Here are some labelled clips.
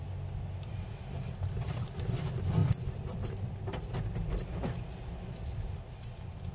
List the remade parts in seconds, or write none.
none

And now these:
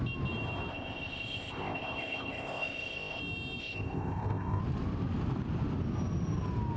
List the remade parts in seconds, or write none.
0.7-3.2; 3.6-4.6

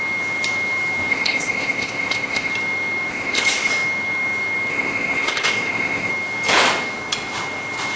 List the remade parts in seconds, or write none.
1.1-2.5; 3.1-3.7; 4.7-6.1